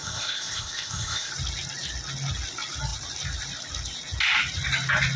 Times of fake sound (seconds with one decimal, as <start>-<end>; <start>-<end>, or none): 0.0-1.3